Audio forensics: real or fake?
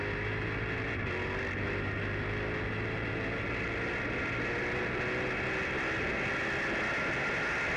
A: real